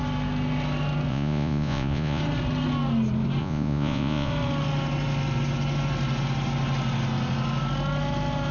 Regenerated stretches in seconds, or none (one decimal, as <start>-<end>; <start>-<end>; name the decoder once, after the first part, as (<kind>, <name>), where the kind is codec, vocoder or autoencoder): 1.1-2.2 (vocoder, Vocos); 3.4-4.3